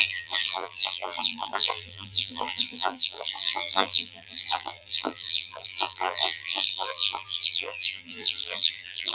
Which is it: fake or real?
fake